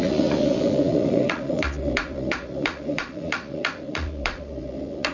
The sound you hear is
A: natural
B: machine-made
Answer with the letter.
B